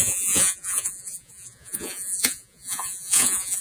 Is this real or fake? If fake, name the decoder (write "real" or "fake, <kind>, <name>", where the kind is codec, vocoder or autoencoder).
fake, vocoder, Vocos